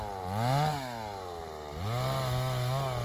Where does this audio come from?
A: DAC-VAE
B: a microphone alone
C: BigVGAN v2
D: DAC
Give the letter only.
B